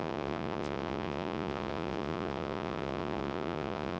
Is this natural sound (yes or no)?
no